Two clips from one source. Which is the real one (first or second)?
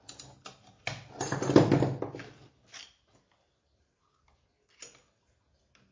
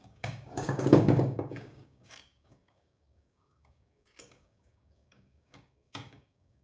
first